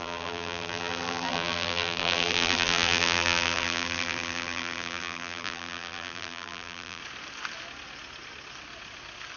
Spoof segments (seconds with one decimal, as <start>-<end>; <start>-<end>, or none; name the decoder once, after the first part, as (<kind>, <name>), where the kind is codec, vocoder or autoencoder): 0.0-7.0 (vocoder, BigVGAN v2)